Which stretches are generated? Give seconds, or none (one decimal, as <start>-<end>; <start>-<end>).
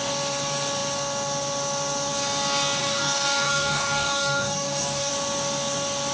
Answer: 2.8-5.1